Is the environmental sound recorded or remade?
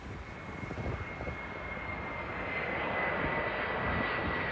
recorded